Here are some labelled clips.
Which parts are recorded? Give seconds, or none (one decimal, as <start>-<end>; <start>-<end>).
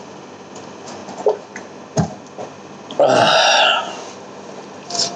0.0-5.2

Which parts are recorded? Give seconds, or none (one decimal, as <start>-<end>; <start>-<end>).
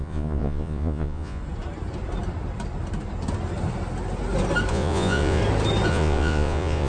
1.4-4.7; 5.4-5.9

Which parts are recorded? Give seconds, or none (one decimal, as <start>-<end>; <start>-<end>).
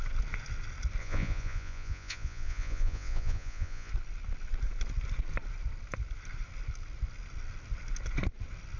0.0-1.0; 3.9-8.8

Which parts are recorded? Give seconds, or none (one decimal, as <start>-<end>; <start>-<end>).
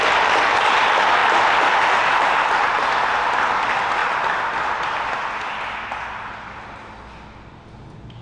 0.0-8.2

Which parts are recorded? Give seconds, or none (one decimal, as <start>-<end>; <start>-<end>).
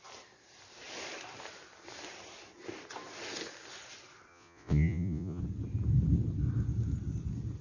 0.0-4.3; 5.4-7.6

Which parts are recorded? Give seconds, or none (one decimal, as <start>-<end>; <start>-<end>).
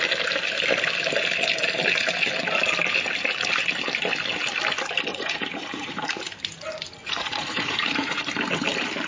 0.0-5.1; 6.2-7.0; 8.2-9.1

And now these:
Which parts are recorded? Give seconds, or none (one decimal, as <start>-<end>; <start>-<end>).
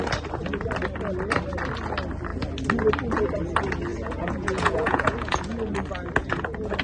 0.0-3.9; 5.4-6.2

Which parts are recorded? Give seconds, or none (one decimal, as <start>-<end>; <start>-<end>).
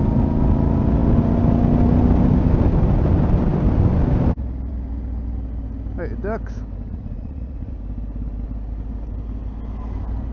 0.0-6.9; 7.8-10.3